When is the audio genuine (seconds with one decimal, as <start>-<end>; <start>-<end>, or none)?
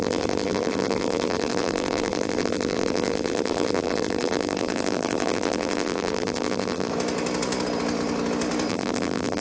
6.9-8.7